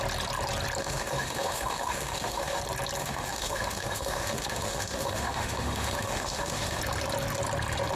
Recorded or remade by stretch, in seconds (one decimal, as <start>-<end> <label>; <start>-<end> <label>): 0.0-0.8 recorded; 0.8-2.6 remade; 2.6-3.0 recorded; 3.0-6.8 remade; 6.8-8.0 recorded